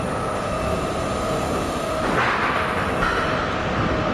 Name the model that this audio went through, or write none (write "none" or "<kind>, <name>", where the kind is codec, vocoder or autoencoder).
none